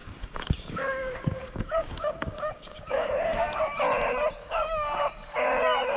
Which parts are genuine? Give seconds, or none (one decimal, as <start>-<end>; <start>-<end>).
3.6-4.4; 5.5-6.0